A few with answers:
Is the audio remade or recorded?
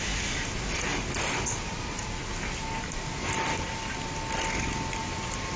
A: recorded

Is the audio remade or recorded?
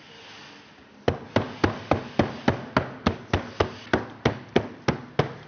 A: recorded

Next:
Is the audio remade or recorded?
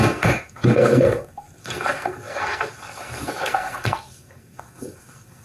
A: remade